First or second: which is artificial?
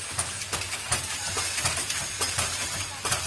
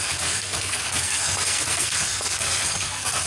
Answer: second